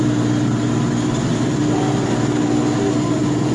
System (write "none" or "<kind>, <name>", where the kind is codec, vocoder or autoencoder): none